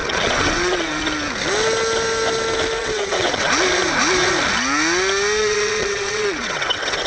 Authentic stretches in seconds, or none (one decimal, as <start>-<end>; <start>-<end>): 1.1-2.8; 3.5-5.4